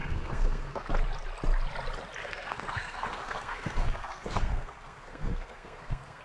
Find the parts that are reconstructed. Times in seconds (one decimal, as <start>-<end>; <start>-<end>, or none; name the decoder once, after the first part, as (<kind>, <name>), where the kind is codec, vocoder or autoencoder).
0.0-0.9 (codec, SNAC); 2.2-6.2